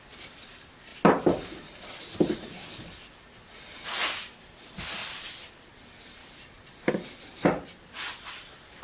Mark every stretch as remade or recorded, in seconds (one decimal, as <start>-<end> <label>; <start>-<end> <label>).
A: 0.0-5.0 recorded; 5.0-5.5 remade; 5.5-6.2 recorded; 6.2-6.9 remade; 6.9-8.8 recorded